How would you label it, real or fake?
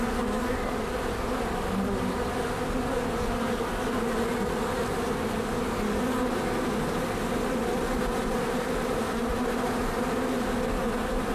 real